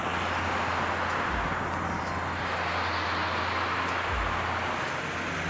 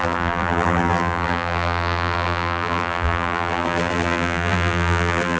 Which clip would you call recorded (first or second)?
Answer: first